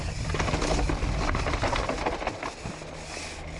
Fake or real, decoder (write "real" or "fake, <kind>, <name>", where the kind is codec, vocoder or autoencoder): real